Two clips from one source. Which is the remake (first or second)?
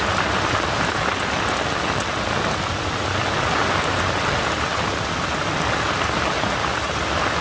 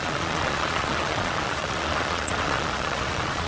second